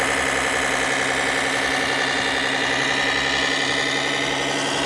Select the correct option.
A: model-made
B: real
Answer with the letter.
B